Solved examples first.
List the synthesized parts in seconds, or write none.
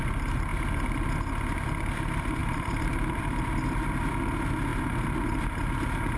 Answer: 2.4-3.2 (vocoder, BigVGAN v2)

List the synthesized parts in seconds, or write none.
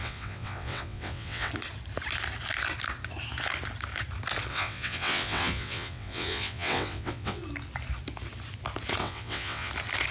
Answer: 0.0-1.5 (vocoder, WaveNeXt); 4.5-7.4; 9.0-9.7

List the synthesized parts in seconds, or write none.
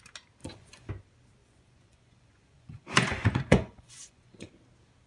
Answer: 0.4-0.9 (vocoder, Vocos); 1.4-4.5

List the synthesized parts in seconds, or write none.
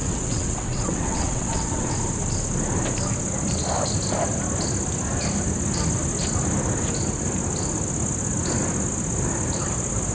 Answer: 0.0-1.9 (vocoder, WaveNeXt)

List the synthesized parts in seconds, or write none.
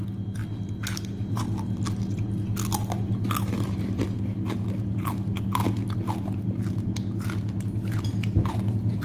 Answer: none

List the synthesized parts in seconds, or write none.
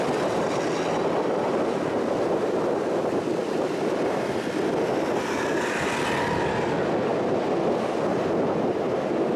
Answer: none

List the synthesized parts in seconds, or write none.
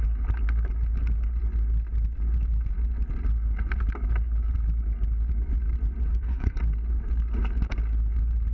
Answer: 6.1-6.6 (codec, SNAC)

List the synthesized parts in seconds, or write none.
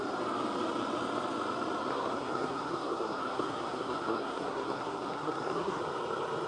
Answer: 1.9-5.8 (codec, SNAC)